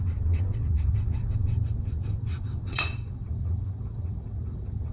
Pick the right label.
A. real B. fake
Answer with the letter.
B